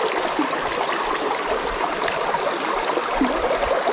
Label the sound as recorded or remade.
recorded